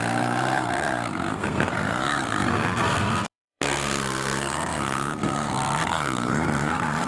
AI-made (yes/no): yes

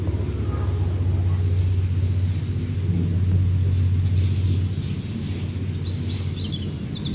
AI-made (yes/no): no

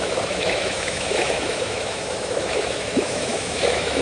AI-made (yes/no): yes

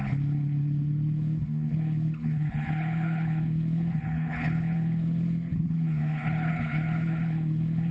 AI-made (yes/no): yes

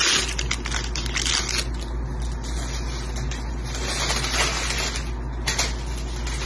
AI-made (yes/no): no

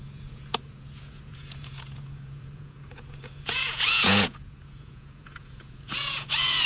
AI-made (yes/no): yes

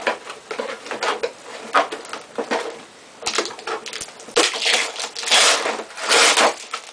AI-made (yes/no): no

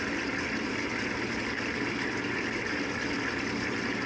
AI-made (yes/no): no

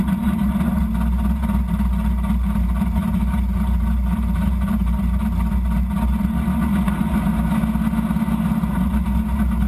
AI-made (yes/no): no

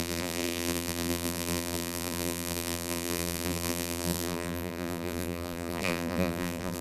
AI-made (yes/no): yes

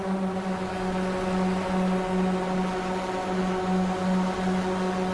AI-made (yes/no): no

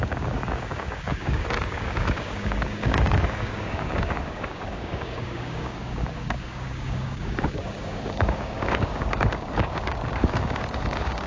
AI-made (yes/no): yes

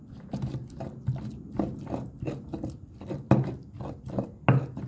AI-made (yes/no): no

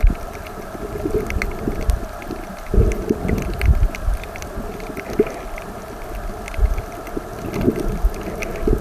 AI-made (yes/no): no